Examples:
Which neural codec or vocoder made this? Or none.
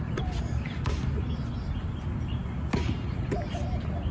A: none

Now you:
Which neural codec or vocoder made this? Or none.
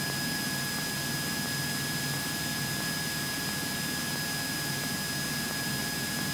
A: none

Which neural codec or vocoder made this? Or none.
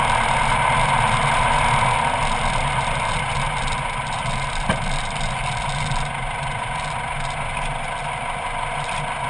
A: none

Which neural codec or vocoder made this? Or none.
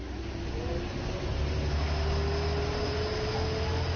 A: none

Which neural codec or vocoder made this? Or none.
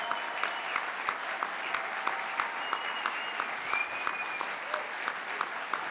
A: none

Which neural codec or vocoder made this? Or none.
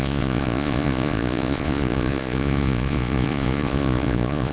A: vocoder, Vocos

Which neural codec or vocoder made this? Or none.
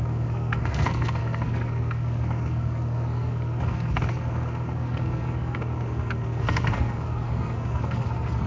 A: codec, SNAC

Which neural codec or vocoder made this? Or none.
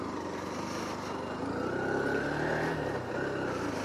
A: none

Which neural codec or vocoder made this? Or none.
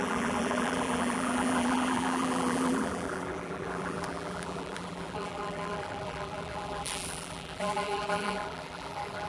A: vocoder, BigVGAN v2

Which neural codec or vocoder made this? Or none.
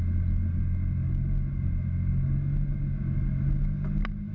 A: none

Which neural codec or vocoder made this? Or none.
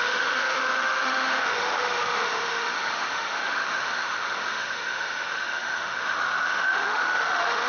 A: autoencoder, DAC-VAE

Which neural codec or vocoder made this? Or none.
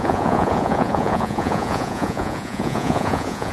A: vocoder, Vocos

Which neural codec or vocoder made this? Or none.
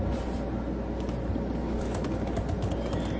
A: none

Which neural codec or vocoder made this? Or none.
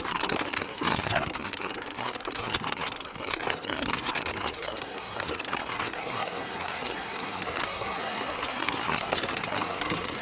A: codec, SNAC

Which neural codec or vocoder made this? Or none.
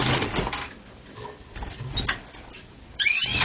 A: vocoder, BigVGAN v2